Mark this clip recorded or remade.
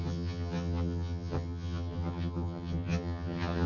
remade